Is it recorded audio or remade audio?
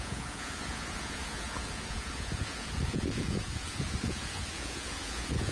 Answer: remade